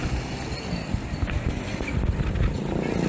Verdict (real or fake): real